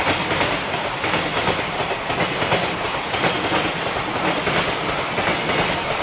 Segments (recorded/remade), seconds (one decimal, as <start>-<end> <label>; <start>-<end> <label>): 0.0-1.3 remade; 1.3-3.4 recorded; 3.4-6.0 remade